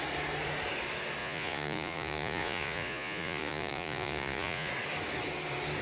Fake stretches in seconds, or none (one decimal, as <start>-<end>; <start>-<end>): 1.2-4.7